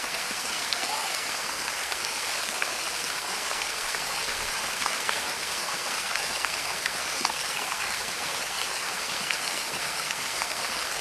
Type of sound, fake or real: fake